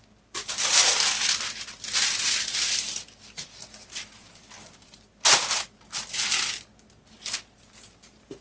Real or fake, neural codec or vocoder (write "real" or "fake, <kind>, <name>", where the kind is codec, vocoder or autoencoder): real